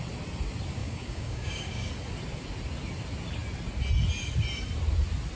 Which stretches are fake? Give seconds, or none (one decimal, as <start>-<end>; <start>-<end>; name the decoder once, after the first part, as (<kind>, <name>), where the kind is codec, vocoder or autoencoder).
0.8-1.9 (codec, DAC)